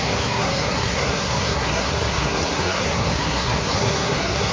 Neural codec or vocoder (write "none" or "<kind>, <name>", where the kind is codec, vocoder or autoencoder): codec, SNAC